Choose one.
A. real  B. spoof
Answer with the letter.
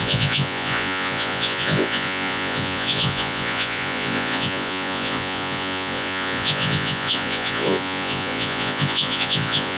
B